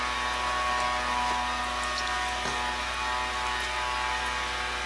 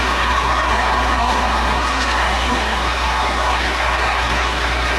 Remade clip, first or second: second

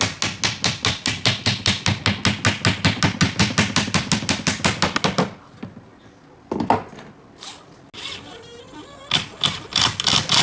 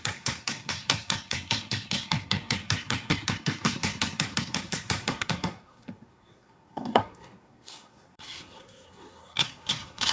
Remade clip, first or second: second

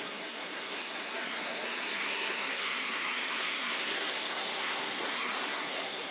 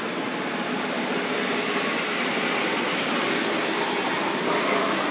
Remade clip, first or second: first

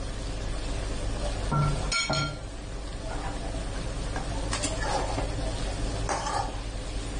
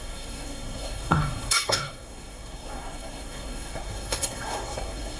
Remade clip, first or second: second